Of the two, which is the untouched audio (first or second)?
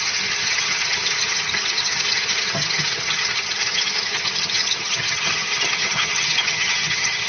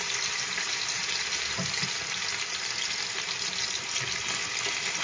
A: second